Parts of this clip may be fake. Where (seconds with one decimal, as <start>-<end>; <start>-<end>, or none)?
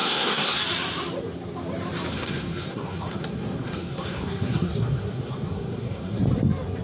0.0-0.6; 2.1-6.2